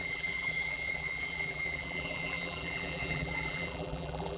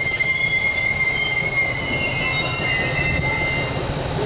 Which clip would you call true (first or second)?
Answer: second